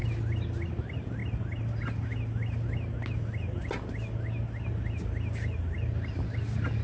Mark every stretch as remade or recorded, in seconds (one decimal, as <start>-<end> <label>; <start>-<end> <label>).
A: 0.0-6.8 recorded